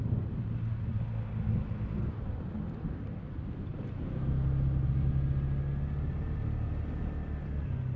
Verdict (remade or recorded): recorded